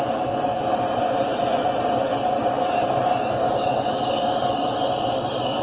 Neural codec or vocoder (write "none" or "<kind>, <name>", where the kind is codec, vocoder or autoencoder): none